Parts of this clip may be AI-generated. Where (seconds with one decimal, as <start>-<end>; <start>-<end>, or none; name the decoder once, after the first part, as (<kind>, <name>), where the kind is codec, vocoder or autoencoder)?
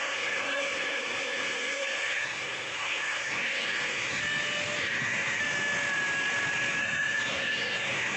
0.0-4.2 (codec, SNAC); 4.8-5.4; 6.8-8.2